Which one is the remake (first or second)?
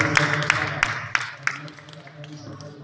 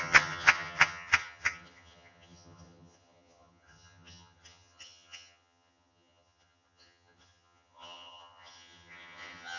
second